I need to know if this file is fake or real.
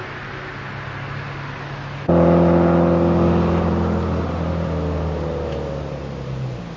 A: real